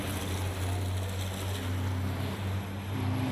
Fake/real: real